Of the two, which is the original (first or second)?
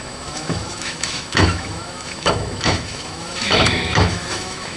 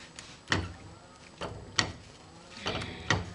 second